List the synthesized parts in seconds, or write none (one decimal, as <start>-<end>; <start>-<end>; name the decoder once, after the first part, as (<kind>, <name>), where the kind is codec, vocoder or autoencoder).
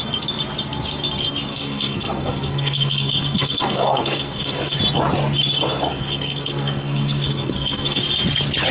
1.5-4.8 (codec, SNAC); 5.9-8.0